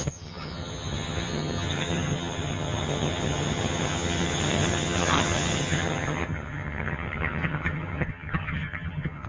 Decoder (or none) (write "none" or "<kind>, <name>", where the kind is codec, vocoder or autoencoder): vocoder, HiFi-GAN